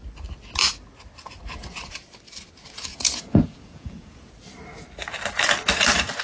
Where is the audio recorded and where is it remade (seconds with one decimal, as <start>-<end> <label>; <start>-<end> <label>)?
0.0-2.9 recorded; 2.9-4.3 remade; 4.3-6.2 recorded

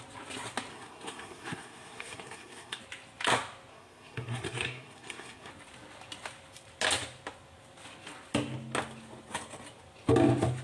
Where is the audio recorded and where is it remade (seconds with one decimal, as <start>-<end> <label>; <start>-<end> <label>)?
0.0-0.7 recorded; 0.7-2.8 remade; 2.8-3.7 recorded; 3.7-5.5 remade; 5.5-10.6 recorded

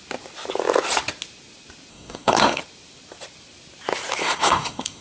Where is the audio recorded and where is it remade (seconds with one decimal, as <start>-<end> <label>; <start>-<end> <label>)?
0.0-1.9 recorded; 1.9-2.6 remade; 2.6-4.2 recorded; 4.2-5.0 remade

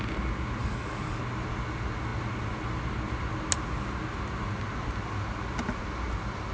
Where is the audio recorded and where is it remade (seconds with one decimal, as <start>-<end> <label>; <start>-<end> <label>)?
0.0-0.6 recorded; 0.6-1.2 remade; 1.2-6.5 recorded

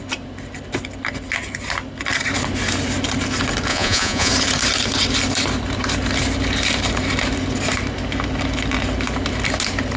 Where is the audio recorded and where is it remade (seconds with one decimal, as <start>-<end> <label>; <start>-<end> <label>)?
0.0-3.7 recorded; 3.7-4.3 remade; 4.3-10.0 recorded

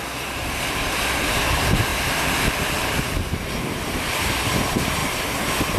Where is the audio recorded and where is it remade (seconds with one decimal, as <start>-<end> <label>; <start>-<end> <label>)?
0.0-0.4 recorded; 0.4-1.4 remade; 1.4-5.0 recorded; 5.0-5.8 remade